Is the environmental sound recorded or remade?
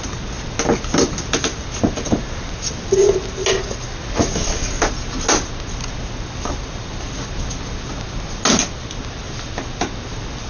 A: recorded